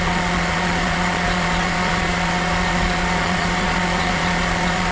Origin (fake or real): fake